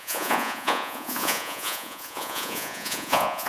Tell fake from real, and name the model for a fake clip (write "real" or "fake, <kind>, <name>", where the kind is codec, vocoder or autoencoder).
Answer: fake, vocoder, Vocos